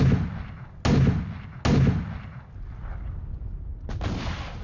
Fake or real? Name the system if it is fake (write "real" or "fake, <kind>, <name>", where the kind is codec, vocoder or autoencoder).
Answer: real